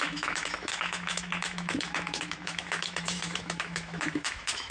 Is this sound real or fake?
fake